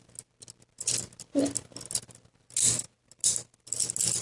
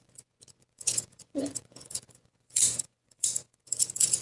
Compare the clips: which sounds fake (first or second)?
second